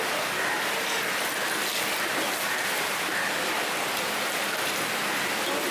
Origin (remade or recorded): recorded